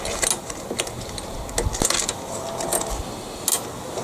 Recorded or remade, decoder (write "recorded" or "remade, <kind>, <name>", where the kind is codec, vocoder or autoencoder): recorded